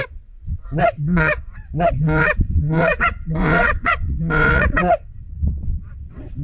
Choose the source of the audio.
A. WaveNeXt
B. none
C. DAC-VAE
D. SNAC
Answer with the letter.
A